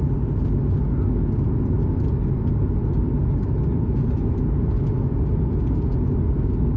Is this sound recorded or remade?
recorded